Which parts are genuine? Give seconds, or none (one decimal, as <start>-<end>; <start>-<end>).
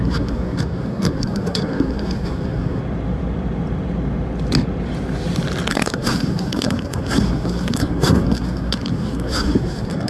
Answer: 2.8-5.7